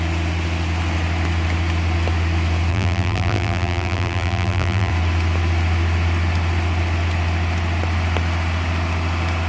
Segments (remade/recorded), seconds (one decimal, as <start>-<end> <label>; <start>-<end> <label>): 0.0-2.7 recorded; 2.7-4.9 remade; 4.9-9.5 recorded